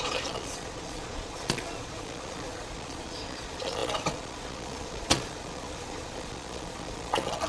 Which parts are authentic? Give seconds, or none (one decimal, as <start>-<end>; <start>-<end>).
none